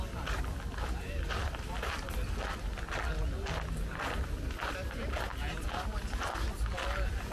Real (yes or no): yes